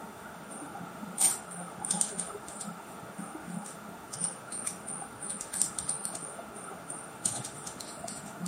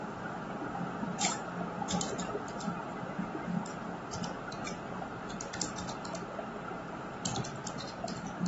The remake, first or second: first